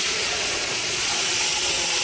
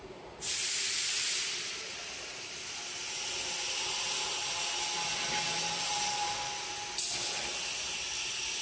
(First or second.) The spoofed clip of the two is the first